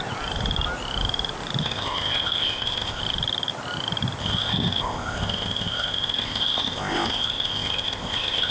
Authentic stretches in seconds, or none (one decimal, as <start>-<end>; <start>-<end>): 0.0-1.6; 3.0-4.2